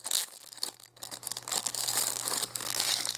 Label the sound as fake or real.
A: fake